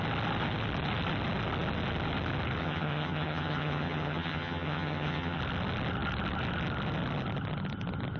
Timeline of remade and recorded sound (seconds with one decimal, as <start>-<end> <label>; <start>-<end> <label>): 0.0-2.6 recorded; 2.6-5.4 remade; 5.4-8.2 recorded